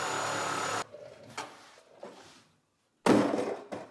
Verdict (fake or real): real